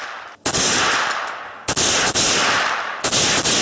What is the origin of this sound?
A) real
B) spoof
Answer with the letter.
A